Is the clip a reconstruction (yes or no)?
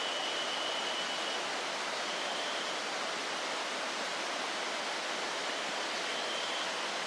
no